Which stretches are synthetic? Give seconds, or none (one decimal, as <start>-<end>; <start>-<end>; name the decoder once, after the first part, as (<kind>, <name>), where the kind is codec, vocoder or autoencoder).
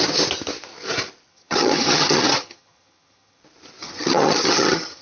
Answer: 1.3-3.4 (vocoder, HiFi-GAN); 3.8-5.0